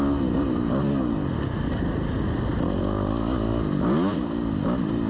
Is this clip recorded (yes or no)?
yes